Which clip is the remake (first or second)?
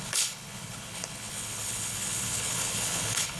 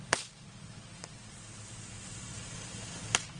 first